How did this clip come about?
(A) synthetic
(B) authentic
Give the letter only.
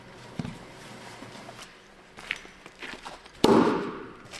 A